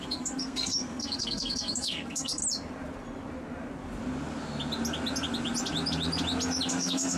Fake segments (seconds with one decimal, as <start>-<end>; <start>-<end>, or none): 0.0-2.4; 6.7-7.2